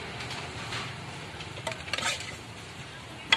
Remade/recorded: remade